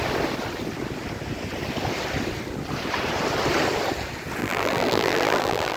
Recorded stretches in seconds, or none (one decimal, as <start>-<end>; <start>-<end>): 0.0-4.4